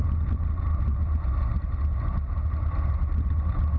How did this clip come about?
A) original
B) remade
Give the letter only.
A